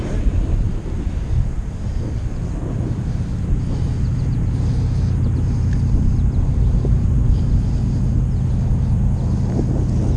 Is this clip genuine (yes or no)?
yes